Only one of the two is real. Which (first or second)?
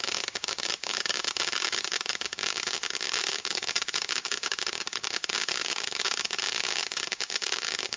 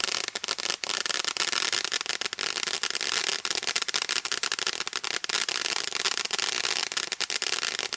second